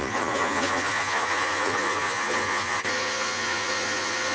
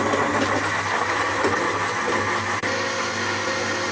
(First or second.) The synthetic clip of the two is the first